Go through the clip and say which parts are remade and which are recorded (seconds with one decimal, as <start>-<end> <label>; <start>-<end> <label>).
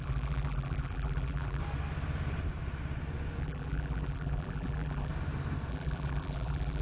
0.0-1.6 remade; 1.6-3.4 recorded; 3.4-5.1 remade; 5.1-5.7 recorded; 5.7-6.8 remade